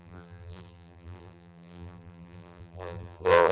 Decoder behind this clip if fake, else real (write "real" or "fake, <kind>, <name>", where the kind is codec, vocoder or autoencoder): fake, vocoder, BigVGAN v2